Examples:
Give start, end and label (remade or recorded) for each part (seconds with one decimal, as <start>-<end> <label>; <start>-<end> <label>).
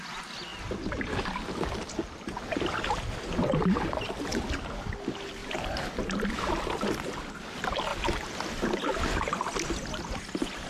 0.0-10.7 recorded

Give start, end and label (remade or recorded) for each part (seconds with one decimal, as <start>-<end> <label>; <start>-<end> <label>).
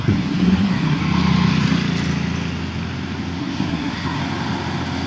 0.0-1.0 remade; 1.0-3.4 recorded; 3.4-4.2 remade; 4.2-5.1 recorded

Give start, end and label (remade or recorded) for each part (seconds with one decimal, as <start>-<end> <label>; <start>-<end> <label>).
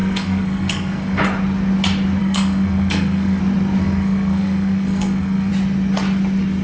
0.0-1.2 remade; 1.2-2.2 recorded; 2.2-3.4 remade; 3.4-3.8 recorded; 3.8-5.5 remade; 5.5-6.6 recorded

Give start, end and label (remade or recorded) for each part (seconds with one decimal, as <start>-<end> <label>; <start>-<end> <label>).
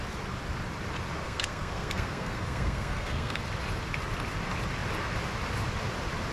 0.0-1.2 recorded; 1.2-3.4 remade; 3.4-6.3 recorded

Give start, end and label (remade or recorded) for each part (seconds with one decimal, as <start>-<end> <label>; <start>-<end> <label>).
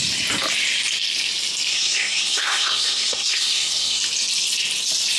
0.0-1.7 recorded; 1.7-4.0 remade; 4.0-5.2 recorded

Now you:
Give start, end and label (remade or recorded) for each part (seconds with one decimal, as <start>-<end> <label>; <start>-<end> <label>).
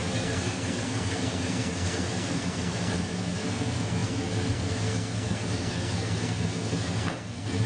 0.0-7.7 remade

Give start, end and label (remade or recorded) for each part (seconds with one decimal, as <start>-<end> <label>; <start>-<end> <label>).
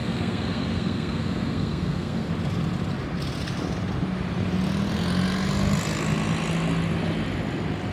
0.0-2.3 remade; 2.3-7.9 recorded